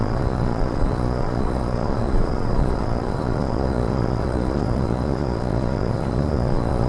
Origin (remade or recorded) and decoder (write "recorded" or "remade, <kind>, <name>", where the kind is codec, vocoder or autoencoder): remade, vocoder, Vocos